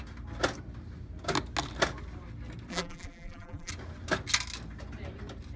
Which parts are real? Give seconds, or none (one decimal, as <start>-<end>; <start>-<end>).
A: 0.0-2.7; 3.7-5.6